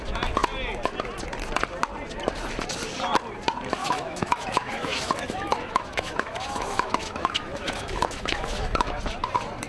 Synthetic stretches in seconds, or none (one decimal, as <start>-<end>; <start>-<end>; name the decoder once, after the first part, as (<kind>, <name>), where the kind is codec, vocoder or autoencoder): 3.8-9.0 (autoencoder, DAC-VAE)